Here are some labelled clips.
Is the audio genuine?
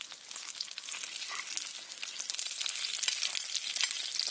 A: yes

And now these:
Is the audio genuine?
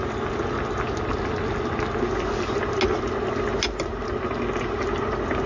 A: yes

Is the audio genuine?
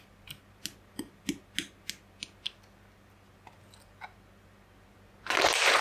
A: yes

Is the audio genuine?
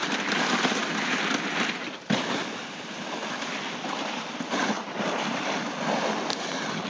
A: yes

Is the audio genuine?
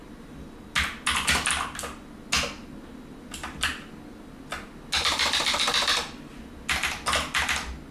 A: yes